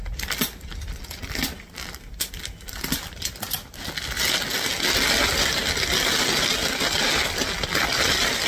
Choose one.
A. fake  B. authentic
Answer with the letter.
B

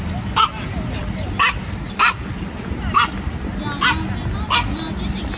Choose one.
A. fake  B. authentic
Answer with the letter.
B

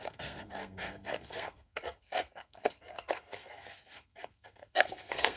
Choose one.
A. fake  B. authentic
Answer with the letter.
A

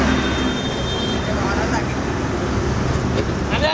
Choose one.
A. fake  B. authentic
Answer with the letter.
B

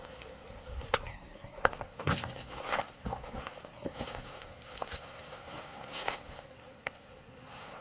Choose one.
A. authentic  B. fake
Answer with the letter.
B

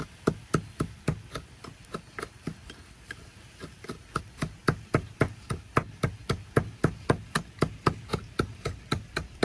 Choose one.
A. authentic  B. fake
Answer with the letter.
A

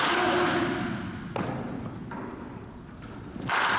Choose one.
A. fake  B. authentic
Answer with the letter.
B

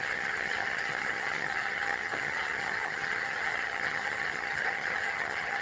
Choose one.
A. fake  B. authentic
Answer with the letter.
A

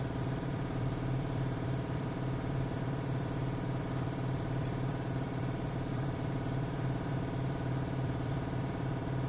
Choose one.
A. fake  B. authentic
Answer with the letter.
A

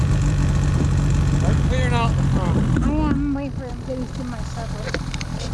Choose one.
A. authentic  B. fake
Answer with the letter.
A